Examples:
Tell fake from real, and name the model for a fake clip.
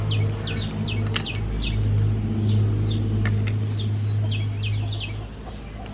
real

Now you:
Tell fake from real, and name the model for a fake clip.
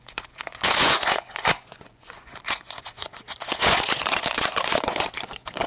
fake, vocoder, Vocos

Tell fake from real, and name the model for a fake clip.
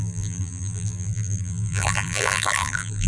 fake, vocoder, BigVGAN v2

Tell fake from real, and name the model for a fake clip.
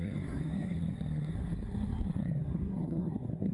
fake, codec, SNAC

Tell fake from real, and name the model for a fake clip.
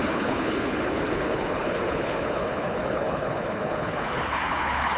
fake, codec, HILCodec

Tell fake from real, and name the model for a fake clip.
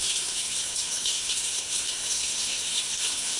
fake, codec, SNAC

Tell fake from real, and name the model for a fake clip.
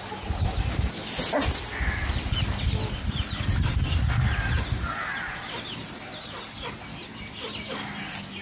real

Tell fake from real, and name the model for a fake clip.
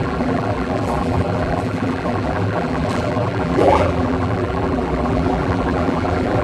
fake, vocoder, BigVGAN v2